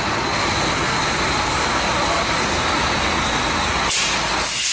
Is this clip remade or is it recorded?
recorded